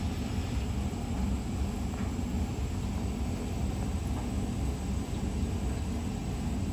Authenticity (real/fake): real